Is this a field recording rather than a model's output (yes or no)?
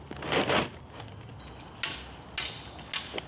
yes